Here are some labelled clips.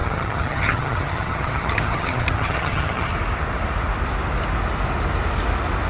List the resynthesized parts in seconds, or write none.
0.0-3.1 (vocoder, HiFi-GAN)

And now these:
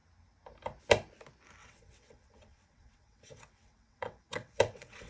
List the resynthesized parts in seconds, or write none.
1.6-5.1 (vocoder, WaveNeXt)